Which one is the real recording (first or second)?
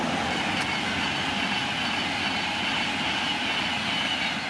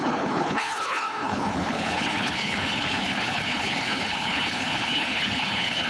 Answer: first